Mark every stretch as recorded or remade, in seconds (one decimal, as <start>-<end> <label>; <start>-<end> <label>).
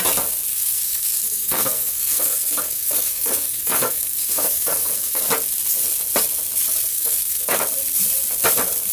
0.0-0.5 recorded; 0.5-5.2 remade; 5.2-6.9 recorded; 6.9-7.6 remade; 7.6-8.9 recorded